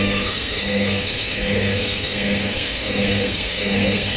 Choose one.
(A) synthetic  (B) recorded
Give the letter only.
A